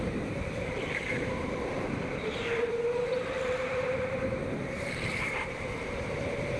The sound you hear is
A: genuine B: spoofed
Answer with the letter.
B